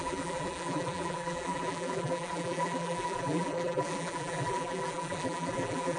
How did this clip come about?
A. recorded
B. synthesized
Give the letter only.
B